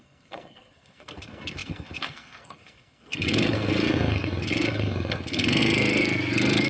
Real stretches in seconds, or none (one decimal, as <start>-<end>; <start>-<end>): none